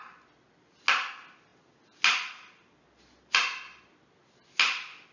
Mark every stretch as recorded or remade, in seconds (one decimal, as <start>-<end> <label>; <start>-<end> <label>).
0.0-5.1 recorded